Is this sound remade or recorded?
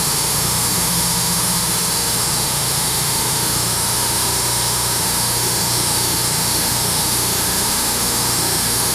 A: remade